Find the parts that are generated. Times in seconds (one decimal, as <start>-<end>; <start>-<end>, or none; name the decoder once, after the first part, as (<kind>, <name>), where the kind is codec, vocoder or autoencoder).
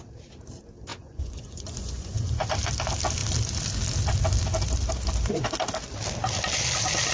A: 0.9-2.3 (vocoder, Vocos)